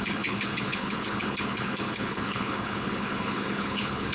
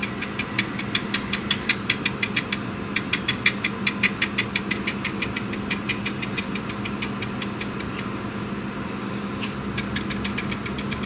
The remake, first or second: first